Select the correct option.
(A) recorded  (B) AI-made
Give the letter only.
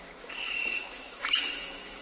B